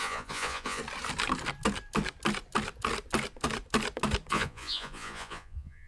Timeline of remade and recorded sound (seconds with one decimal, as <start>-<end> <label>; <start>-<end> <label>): 0.0-0.8 remade; 0.8-4.3 recorded; 4.3-5.9 remade